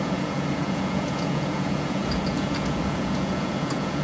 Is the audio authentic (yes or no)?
no